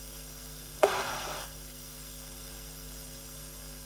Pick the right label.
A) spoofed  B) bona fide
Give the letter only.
A